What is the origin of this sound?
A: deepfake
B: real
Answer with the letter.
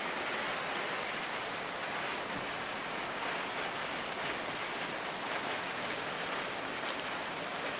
B